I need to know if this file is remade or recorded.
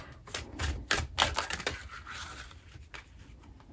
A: recorded